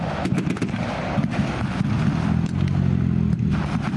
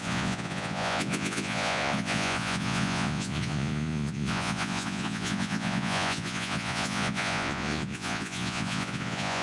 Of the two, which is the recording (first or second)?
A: first